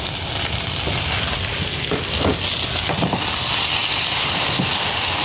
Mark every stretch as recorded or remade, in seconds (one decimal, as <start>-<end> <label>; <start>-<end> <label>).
0.0-5.2 recorded